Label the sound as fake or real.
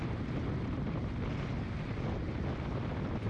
real